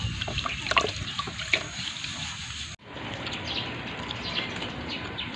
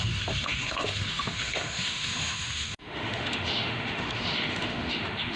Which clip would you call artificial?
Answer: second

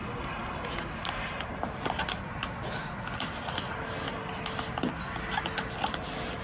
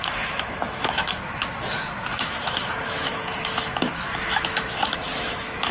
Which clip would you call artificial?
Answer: second